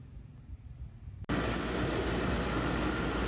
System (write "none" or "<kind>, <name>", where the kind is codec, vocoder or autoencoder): none